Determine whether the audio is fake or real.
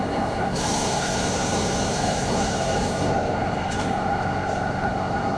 fake